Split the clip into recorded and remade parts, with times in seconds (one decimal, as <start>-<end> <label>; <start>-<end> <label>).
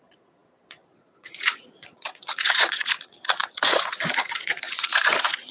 0.0-5.5 remade